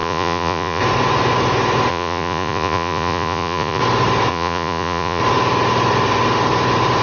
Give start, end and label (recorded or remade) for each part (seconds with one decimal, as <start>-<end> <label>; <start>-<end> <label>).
0.0-0.8 remade; 0.8-1.9 recorded; 1.9-3.8 remade; 3.8-4.3 recorded; 4.3-5.2 remade; 5.2-7.0 recorded